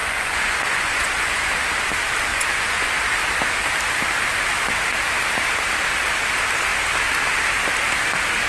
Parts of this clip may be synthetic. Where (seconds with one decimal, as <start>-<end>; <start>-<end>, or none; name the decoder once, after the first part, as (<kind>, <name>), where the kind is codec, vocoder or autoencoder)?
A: 0.0-1.5 (vocoder, Vocos); 2.3-2.9